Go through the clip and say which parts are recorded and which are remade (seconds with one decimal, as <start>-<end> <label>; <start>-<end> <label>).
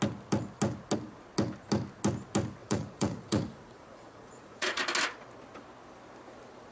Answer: 0.0-2.6 recorded; 2.6-4.8 remade; 4.8-6.7 recorded